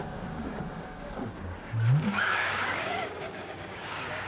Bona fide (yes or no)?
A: no